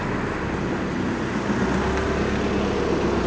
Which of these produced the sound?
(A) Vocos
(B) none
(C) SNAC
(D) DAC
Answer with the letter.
B